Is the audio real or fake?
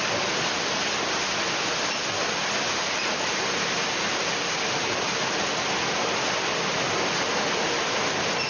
real